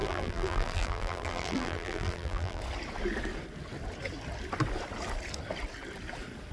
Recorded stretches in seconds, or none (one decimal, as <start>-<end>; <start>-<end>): 2.6-6.5

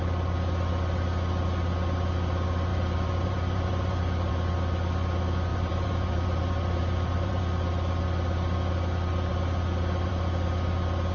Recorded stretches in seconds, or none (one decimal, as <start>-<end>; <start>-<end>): 0.0-2.7; 4.3-5.5; 7.4-11.1

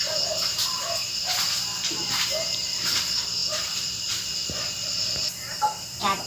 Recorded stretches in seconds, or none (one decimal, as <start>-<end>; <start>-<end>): 0.7-1.9

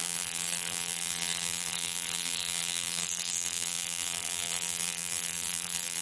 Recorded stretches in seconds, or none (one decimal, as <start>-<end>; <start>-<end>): none

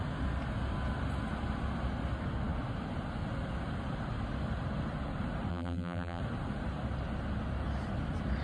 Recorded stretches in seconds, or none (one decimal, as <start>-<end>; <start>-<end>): 0.0-5.5; 6.2-8.4

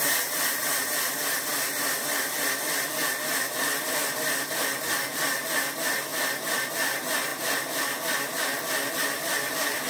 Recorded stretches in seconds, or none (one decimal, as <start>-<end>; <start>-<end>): 6.1-6.7; 7.3-8.9

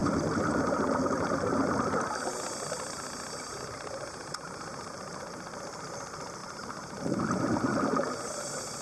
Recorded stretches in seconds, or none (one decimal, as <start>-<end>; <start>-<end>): 0.0-3.5; 5.2-6.4; 7.0-8.8

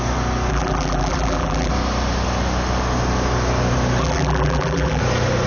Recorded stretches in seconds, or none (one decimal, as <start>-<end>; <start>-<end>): 0.0-0.5; 1.7-4.0; 5.0-5.5